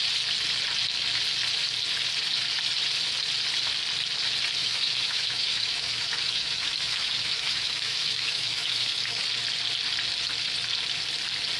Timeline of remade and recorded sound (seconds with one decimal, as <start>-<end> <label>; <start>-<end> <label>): 0.0-4.6 recorded; 4.6-9.2 remade; 9.2-11.6 recorded